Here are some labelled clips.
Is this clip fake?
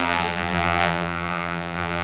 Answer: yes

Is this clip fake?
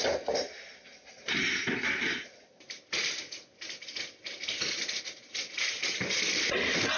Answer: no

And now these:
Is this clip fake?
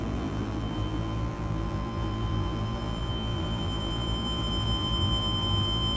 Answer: yes